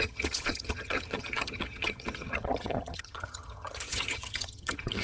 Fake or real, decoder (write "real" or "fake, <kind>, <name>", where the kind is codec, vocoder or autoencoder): fake, vocoder, HiFi-GAN